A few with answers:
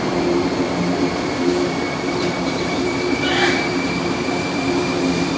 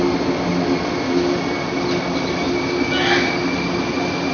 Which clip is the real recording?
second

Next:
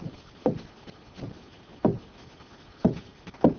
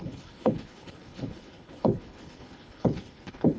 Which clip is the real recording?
first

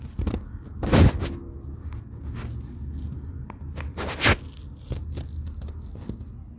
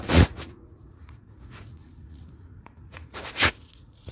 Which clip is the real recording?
first